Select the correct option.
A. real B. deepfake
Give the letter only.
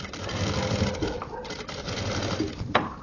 A